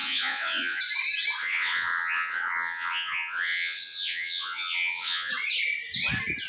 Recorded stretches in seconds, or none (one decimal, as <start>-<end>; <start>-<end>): 0.8-1.4; 5.3-6.5